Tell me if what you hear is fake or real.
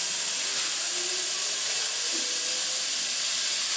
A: real